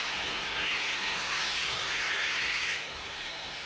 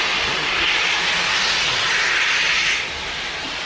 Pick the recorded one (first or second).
second